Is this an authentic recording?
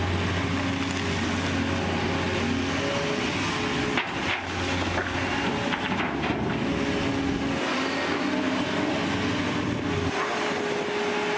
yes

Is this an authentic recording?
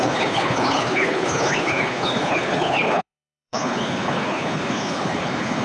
no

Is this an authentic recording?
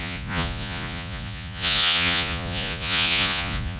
no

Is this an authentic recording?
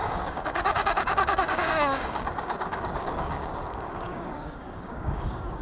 no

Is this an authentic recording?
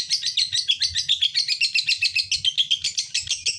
yes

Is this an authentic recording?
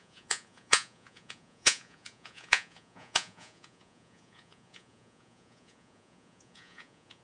no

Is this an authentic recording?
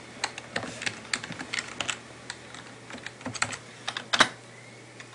yes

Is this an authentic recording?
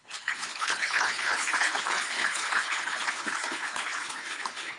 no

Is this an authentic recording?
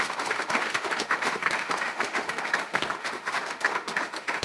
no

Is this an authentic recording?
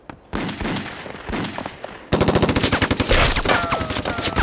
yes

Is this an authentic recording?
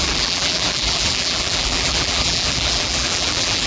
no